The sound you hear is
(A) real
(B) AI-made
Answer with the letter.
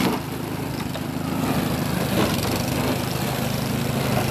A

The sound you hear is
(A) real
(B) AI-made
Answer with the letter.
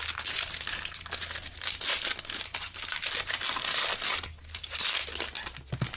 A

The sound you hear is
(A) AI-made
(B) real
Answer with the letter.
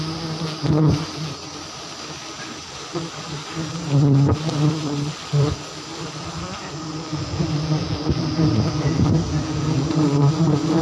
B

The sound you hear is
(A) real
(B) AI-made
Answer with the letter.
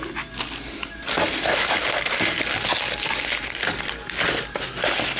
A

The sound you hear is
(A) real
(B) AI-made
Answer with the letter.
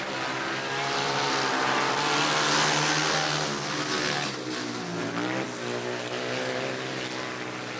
A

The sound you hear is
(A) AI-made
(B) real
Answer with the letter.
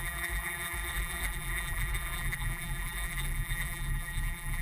A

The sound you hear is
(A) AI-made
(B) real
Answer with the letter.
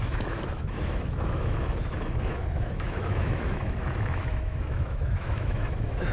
A